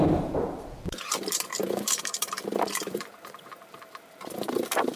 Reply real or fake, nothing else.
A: fake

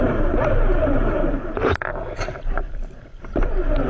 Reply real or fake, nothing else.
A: fake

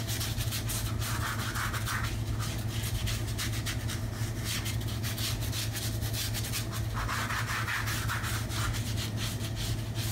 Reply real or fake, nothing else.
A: real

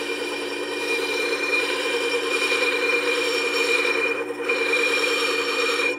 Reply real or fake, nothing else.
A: fake